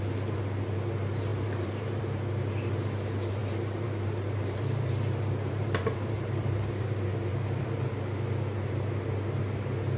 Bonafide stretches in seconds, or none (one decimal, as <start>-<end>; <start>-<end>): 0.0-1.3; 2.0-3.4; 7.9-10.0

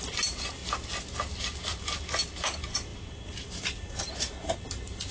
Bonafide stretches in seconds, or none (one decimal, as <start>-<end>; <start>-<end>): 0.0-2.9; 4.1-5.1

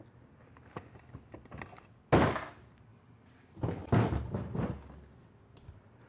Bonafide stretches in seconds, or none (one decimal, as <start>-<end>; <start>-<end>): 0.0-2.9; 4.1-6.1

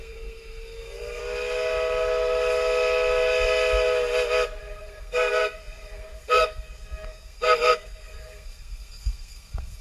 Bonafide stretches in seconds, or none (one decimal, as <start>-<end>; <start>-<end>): 1.2-4.6